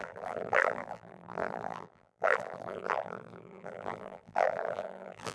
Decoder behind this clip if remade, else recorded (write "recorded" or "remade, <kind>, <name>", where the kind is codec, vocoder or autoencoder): remade, vocoder, BigVGAN v2